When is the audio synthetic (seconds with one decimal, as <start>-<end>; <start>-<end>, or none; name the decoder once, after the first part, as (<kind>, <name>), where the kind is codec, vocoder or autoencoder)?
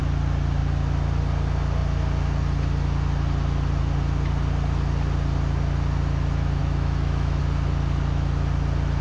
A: 6.6-7.4 (autoencoder, DAC-VAE)